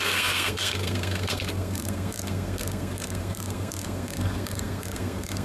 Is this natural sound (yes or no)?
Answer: no